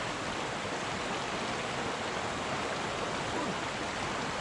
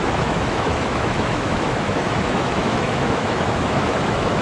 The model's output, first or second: second